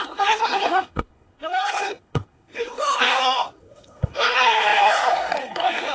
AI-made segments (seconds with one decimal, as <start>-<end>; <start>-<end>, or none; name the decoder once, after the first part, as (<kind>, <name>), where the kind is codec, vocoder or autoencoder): 0.0-5.9 (codec, SNAC)